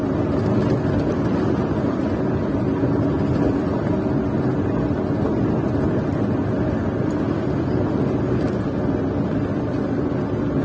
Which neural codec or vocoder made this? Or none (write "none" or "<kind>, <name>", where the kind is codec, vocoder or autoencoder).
none